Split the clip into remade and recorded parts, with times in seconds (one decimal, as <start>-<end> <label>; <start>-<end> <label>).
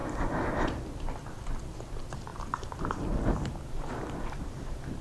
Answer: 0.0-5.0 recorded